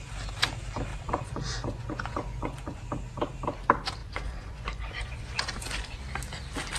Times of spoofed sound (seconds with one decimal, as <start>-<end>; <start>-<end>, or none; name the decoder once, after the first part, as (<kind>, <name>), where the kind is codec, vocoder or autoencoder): 0.9-2.8 (vocoder, Vocos); 4.0-6.0